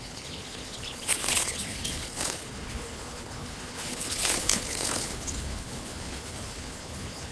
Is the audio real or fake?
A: fake